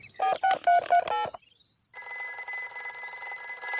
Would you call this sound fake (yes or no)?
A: no